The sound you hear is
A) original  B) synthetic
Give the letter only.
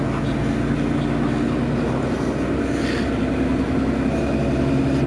A